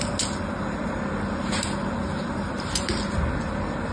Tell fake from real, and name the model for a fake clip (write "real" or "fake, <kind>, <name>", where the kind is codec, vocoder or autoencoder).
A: real